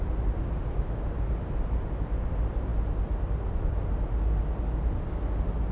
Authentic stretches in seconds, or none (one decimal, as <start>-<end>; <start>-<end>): 0.0-5.7